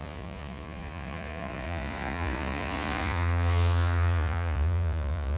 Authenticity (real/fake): fake